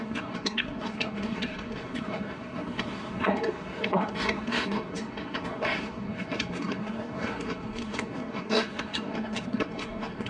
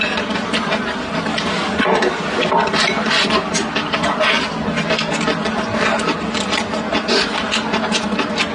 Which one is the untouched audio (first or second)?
second